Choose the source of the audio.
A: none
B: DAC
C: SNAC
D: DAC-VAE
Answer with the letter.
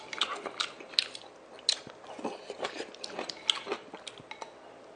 A